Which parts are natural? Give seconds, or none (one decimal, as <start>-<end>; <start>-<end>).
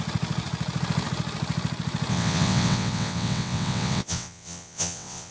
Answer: 0.0-2.1